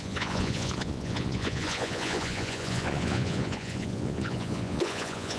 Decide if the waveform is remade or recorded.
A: remade